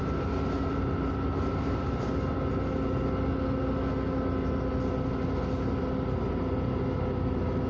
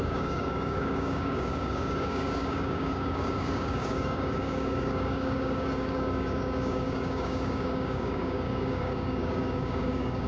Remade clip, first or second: second